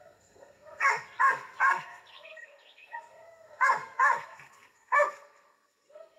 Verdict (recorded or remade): remade